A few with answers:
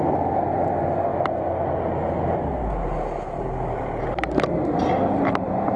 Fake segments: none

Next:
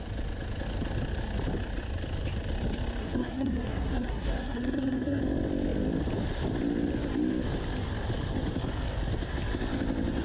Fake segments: 3.0-5.2 (codec, SNAC)

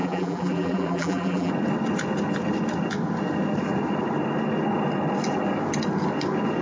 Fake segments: 0.0-1.5 (vocoder, BigVGAN v2)

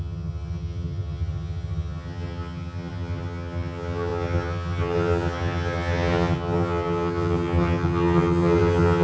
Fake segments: 0.0-9.0 (vocoder, HiFi-GAN)

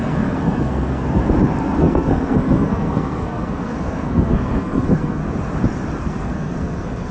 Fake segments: 0.0-1.2 (codec, SNAC); 1.8-5.2; 6.0-7.1

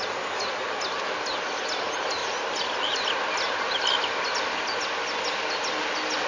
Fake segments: none